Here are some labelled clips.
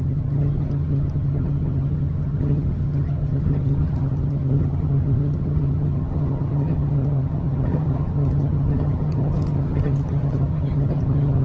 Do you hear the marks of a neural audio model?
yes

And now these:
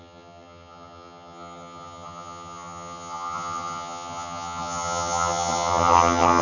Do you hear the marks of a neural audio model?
yes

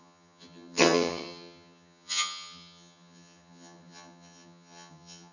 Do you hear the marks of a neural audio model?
yes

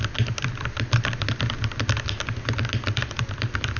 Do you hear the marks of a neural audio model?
no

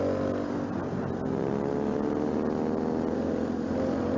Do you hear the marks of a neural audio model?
no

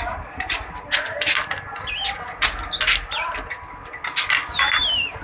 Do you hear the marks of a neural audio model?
no